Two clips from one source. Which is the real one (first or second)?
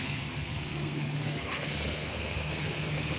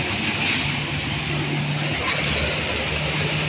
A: second